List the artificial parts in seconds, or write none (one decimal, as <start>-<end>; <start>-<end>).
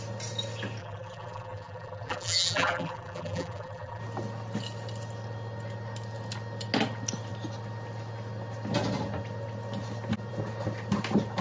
0.8-4.0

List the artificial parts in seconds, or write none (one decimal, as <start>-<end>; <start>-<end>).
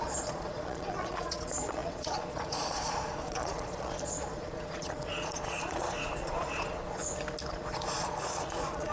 0.0-7.0; 7.5-8.9